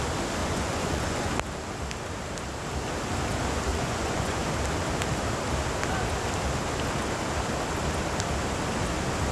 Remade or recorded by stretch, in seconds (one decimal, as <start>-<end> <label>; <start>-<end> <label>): 0.0-0.4 recorded; 0.4-1.3 remade; 1.3-3.7 recorded; 3.7-4.5 remade; 4.5-9.3 recorded